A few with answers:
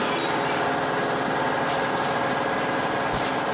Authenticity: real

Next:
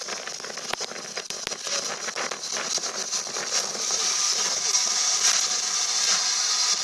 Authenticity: real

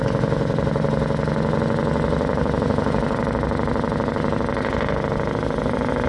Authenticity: real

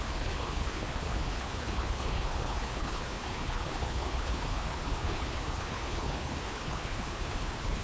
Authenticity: fake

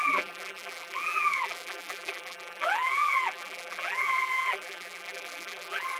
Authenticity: fake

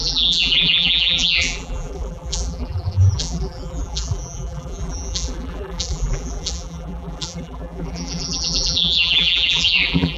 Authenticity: fake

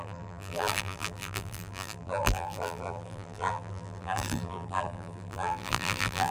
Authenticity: fake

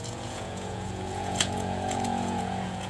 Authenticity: fake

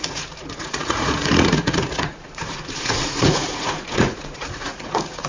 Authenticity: fake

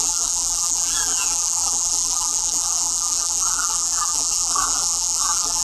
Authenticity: fake